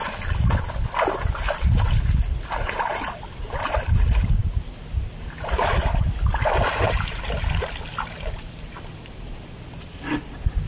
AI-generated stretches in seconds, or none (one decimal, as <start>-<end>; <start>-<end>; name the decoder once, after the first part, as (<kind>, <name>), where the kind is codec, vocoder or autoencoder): none

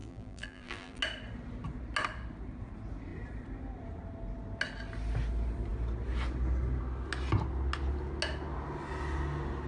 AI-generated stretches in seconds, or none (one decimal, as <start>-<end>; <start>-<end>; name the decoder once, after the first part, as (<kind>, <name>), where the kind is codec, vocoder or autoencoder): 0.0-1.0 (vocoder, BigVGAN v2)

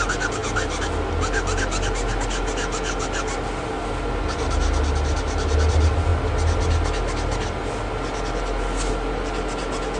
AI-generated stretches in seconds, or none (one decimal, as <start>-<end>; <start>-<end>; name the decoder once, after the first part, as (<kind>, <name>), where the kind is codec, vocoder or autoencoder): none

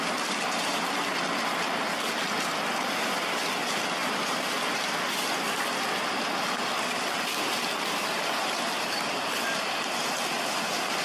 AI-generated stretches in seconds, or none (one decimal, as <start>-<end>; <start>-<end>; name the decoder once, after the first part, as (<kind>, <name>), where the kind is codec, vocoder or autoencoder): 4.0-4.5 (vocoder, BigVGAN v2)